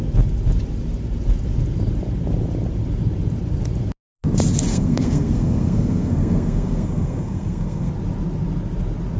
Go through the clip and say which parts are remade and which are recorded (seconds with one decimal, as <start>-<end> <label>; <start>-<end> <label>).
0.0-4.7 recorded; 4.7-7.9 remade; 7.9-9.2 recorded